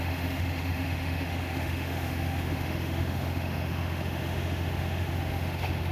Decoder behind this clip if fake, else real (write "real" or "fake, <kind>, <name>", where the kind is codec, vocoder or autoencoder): fake, autoencoder, DAC-VAE